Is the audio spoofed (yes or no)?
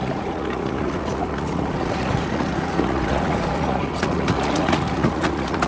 yes